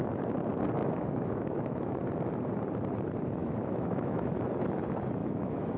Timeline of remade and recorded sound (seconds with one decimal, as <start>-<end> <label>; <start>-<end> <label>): 0.0-0.8 recorded; 0.8-1.9 remade; 1.9-3.4 recorded; 3.4-4.4 remade; 4.4-5.2 recorded; 5.2-5.8 remade